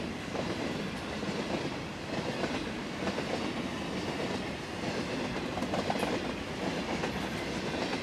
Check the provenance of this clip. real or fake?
real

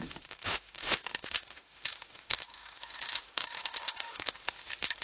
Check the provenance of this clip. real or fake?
fake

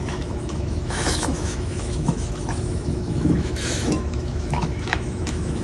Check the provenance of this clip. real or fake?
fake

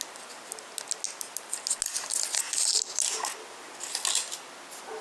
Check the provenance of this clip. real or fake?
real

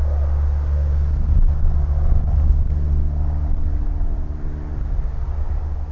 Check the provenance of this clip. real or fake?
real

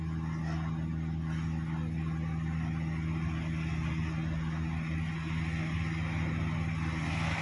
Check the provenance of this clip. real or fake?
real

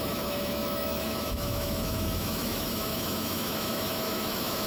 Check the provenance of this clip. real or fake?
fake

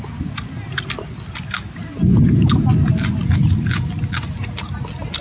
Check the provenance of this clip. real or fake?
real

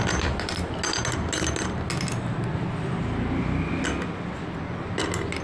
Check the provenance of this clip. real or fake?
real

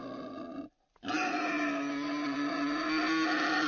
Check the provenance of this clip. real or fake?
real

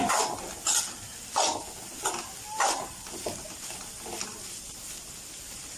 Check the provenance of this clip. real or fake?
real